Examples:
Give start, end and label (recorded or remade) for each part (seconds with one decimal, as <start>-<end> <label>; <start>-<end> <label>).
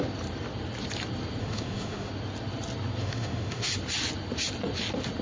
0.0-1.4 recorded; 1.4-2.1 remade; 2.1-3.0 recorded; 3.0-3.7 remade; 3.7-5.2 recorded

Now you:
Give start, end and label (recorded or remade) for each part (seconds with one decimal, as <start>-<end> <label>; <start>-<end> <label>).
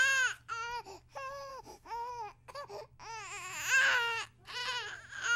0.0-1.5 recorded; 1.5-2.1 remade; 2.1-5.4 recorded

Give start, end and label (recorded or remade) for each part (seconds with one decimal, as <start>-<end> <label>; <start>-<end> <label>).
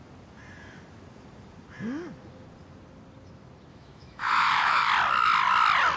0.0-3.7 recorded; 3.7-4.9 remade; 4.9-6.0 recorded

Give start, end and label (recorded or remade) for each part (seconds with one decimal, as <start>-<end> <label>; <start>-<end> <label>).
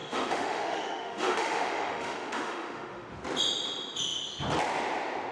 0.0-3.1 remade; 3.1-5.3 recorded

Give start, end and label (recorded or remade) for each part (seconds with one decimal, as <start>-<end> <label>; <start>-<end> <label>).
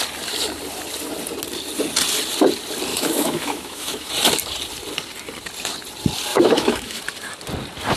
0.0-2.9 recorded; 2.9-4.1 remade; 4.1-6.3 recorded; 6.3-7.0 remade; 7.0-8.0 recorded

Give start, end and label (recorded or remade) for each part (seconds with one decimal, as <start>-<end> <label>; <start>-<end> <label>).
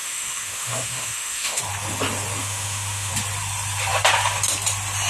0.0-1.6 remade; 1.6-2.4 recorded; 2.4-3.1 remade; 3.1-5.1 recorded